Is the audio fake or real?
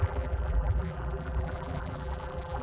fake